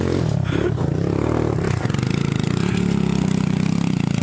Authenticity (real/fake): real